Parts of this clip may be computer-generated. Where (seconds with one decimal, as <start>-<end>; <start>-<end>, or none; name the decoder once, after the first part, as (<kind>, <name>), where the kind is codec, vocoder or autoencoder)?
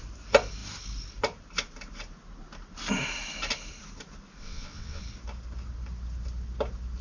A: 4.4-5.0 (vocoder, WaveNeXt)